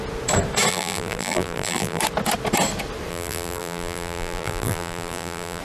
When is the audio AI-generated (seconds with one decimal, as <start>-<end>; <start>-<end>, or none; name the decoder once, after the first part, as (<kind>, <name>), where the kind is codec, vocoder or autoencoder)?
0.7-2.0 (vocoder, BigVGAN v2); 3.1-5.6